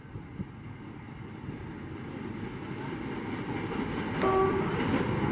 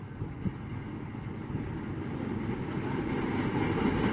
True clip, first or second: second